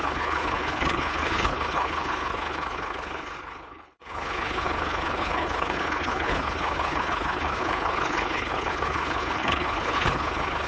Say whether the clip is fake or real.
fake